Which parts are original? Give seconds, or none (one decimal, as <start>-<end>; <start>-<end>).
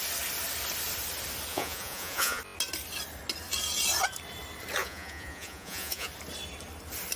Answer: 0.0-1.5; 2.4-4.8; 6.1-7.2